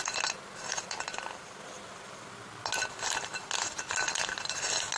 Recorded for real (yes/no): yes